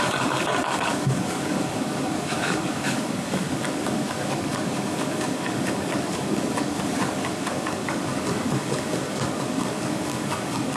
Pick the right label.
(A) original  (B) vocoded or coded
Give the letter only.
B